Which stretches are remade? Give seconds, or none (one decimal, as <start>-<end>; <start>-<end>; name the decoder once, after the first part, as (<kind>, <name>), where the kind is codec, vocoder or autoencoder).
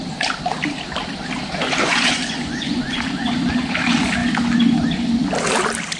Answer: 1.8-3.3 (vocoder, Vocos)